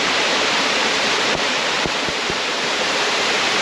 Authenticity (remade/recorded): remade